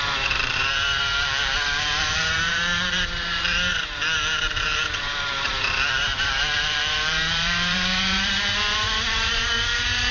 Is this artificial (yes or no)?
yes